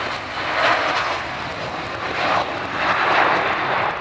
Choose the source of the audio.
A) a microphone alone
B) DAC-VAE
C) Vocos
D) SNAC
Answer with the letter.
A